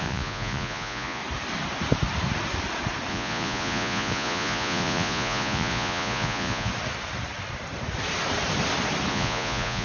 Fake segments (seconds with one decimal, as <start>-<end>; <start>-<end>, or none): 0.0-1.2; 3.1-6.7; 9.1-9.8

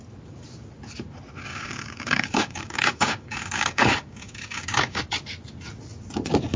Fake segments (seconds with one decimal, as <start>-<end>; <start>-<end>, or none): 1.5-5.0

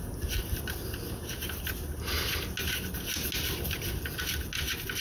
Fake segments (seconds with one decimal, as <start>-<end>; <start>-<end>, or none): none